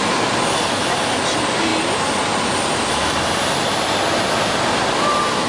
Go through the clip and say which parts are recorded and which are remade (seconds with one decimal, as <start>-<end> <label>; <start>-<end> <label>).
0.0-5.5 recorded